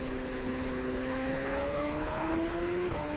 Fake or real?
fake